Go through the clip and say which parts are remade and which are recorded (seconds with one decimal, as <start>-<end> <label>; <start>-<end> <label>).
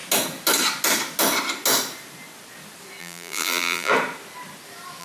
0.0-3.0 recorded; 3.0-3.9 remade; 3.9-5.0 recorded